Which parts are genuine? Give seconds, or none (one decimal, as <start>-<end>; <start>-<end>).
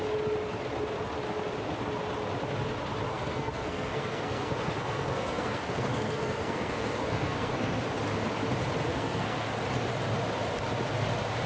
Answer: 0.0-3.1; 7.8-8.9; 9.5-11.5